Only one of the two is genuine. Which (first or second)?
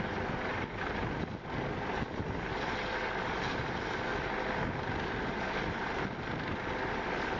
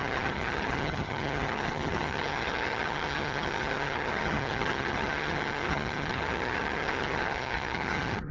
first